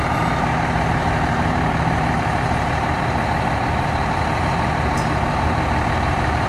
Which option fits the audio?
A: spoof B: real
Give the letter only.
A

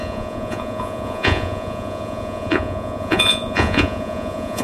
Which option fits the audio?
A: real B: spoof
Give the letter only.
B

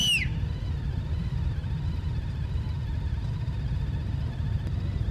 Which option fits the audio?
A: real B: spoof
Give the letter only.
A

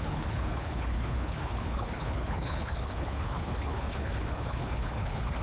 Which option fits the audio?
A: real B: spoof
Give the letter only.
B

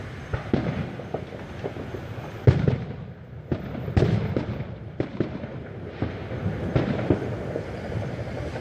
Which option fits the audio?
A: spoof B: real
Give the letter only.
B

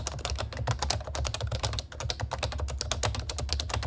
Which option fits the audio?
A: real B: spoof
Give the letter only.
A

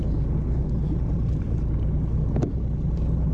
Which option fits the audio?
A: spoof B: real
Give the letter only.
B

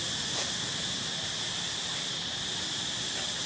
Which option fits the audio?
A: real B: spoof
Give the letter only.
A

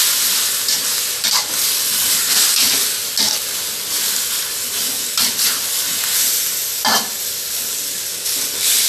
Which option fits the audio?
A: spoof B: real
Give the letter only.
B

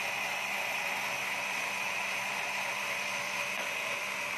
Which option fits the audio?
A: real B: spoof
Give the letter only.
A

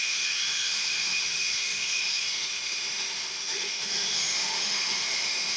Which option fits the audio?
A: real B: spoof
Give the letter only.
B